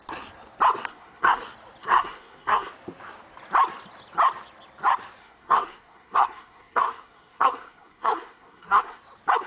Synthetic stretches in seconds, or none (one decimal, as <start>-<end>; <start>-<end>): 0.9-1.4; 1.8-2.7; 5.2-9.0